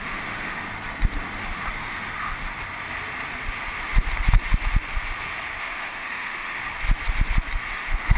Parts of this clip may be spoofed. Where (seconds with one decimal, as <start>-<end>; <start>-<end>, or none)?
0.0-0.7; 5.6-6.6; 7.7-8.2